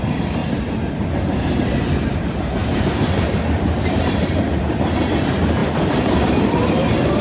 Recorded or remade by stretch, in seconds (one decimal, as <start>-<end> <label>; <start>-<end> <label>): 0.0-0.4 remade; 0.4-2.1 recorded; 2.1-7.2 remade